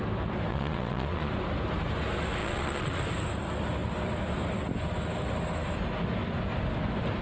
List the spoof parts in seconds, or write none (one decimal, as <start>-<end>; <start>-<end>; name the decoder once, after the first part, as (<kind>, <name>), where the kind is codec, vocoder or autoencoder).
0.5-1.3 (vocoder, Vocos); 2.4-3.0